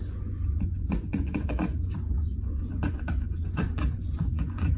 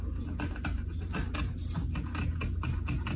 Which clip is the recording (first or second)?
second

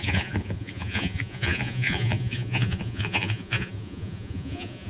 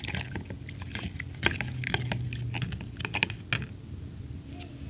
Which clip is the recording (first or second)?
second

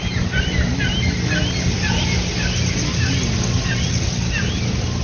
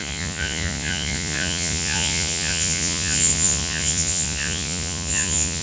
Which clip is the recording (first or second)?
first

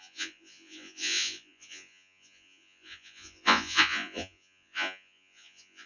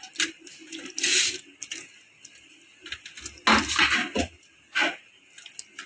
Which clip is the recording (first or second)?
second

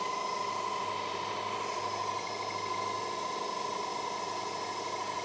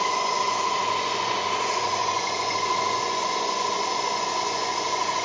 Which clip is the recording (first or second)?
first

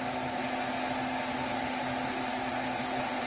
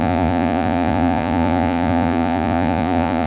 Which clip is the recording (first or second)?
first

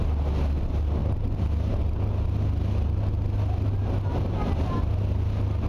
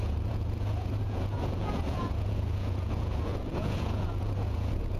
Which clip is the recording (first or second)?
first